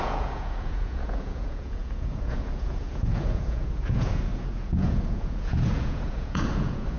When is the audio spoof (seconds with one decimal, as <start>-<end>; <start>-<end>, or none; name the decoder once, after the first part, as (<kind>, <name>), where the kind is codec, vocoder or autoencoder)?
0.0-7.0 (vocoder, Vocos)